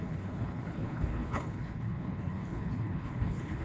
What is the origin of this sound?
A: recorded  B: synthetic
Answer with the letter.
B